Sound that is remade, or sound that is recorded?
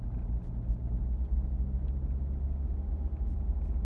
recorded